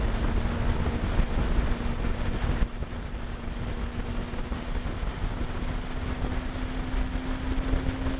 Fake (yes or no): no